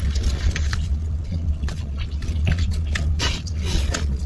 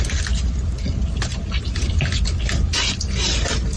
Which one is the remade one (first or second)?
first